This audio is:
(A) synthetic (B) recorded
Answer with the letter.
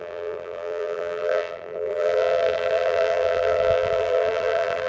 A